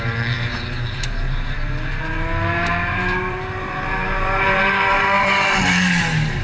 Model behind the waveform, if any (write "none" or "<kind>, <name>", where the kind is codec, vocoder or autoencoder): vocoder, BigVGAN v2